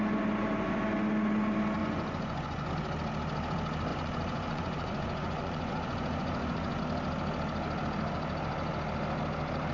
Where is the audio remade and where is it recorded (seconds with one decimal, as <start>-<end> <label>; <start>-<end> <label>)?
0.0-1.8 recorded; 1.8-2.7 remade; 2.7-3.9 recorded; 3.9-6.8 remade; 6.8-9.7 recorded